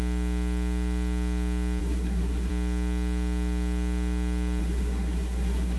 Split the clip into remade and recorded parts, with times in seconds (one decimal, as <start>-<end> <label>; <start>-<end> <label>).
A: 0.0-1.8 recorded; 1.8-2.5 remade; 2.5-4.6 recorded; 4.6-5.8 remade